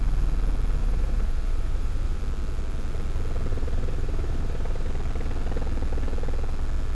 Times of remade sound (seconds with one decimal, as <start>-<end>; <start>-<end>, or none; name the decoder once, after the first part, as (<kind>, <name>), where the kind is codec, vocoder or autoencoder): 0.8-2.2 (vocoder, BigVGAN v2); 3.5-4.9